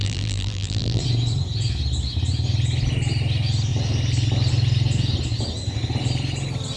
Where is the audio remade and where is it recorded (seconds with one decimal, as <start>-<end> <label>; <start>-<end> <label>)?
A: 0.0-1.0 remade; 1.0-6.8 recorded